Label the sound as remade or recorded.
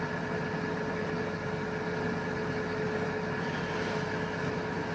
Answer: recorded